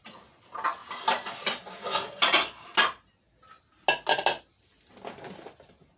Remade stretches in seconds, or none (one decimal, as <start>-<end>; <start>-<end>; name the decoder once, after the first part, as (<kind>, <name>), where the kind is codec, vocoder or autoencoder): none